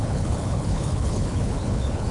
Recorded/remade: remade